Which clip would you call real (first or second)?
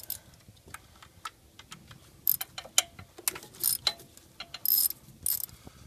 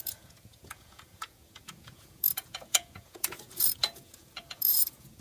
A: first